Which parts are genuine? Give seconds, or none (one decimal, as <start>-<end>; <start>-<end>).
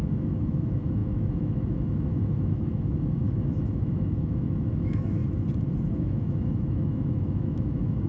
5.2-5.9